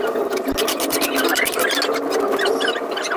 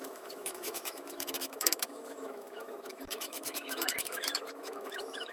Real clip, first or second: first